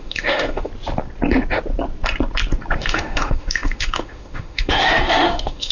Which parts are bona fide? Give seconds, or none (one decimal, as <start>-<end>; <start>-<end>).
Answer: 0.7-2.8